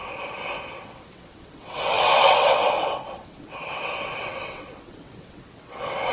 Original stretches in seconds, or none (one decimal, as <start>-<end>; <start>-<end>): 0.0-0.7